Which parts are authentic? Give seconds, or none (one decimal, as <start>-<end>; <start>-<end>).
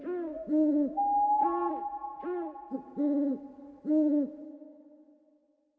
0.0-5.8